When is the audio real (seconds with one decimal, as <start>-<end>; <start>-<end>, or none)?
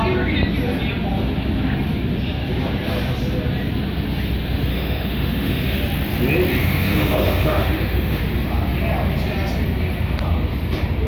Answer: 0.0-4.7; 5.8-6.6; 8.2-11.1